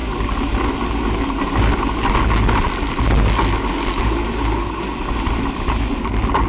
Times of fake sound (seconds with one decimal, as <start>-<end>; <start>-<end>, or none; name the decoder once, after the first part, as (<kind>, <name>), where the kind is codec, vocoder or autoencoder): none

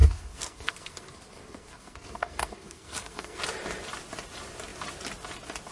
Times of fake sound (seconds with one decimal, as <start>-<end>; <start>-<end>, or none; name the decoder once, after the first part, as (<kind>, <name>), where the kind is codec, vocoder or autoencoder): 0.0-3.4 (codec, SNAC)